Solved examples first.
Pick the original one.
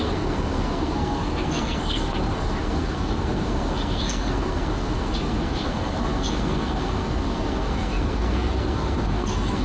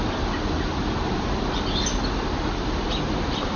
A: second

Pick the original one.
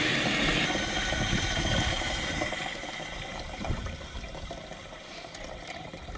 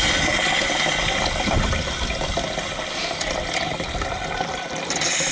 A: second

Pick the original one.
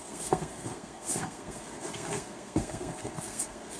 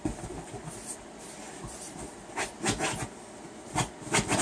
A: second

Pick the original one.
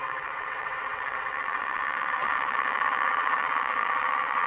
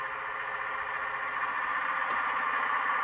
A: second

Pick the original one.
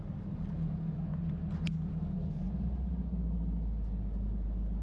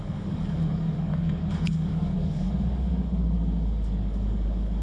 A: first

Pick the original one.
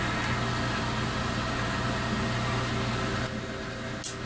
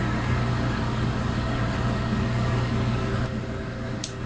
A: first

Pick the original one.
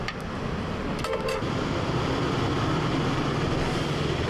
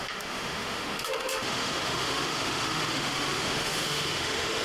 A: first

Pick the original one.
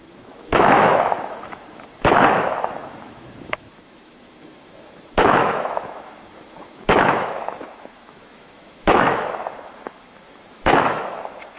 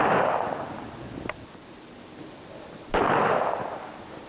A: second